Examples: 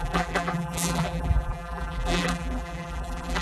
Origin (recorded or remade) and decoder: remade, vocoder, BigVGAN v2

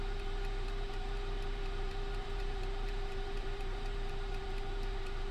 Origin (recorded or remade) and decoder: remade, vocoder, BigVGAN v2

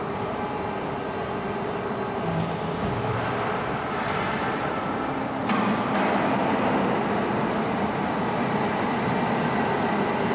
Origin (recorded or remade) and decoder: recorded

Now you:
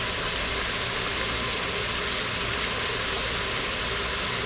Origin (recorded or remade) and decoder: recorded